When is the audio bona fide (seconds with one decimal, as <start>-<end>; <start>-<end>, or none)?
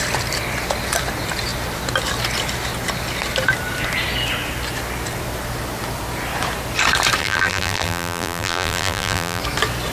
0.0-7.2; 9.4-9.9